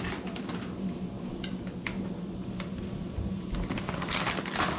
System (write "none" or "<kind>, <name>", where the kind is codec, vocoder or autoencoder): none